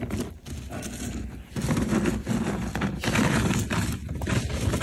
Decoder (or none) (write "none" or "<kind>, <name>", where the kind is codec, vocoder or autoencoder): none